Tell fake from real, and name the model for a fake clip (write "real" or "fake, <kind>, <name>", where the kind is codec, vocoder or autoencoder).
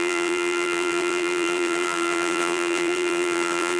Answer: fake, vocoder, BigVGAN v2